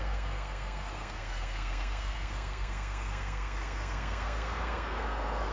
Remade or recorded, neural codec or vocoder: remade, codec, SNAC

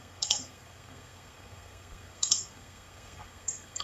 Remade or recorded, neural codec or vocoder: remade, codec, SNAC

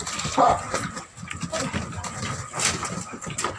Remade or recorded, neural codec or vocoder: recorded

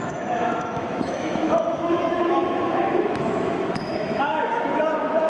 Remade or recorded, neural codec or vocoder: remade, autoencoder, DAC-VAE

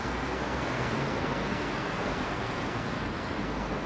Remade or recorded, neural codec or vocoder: remade, codec, SNAC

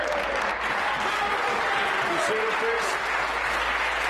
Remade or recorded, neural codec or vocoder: recorded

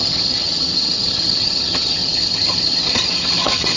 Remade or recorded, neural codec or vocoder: remade, vocoder, HiFi-GAN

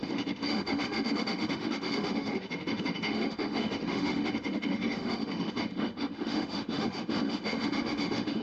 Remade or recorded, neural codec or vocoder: remade, autoencoder, DAC-VAE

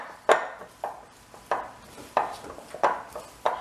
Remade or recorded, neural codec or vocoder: remade, vocoder, BigVGAN v2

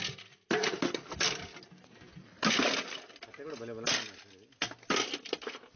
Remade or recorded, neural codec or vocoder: recorded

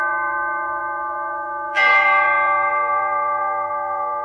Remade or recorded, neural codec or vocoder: remade, vocoder, BigVGAN v2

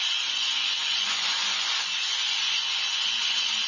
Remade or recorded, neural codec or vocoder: remade, vocoder, Vocos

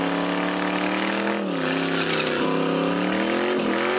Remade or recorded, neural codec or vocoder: recorded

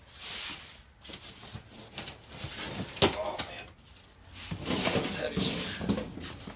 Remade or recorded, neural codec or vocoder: recorded